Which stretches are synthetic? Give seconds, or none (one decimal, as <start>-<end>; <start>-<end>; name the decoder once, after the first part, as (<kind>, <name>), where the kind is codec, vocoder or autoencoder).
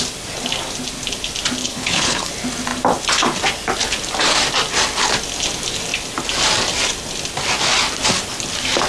1.6-2.3 (codec, HILCodec)